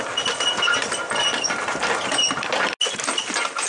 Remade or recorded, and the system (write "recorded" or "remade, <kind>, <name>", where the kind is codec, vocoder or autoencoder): recorded